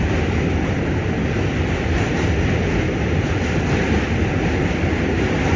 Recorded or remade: recorded